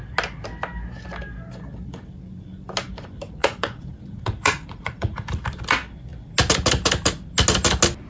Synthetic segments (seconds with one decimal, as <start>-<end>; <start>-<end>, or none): 3.4-5.4

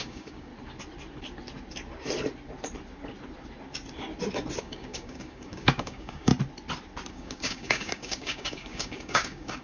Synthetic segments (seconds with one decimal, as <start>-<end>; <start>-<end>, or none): 0.0-0.5; 4.6-6.3; 7.1-9.6

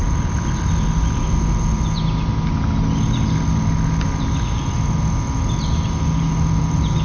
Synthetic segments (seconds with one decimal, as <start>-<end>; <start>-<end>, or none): none